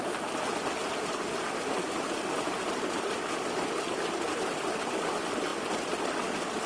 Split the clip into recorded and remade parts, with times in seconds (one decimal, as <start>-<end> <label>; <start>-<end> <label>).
0.0-6.7 recorded